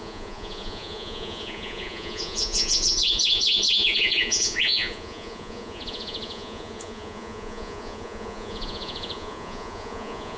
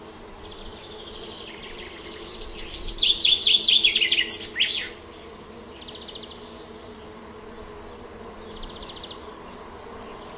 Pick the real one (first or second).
second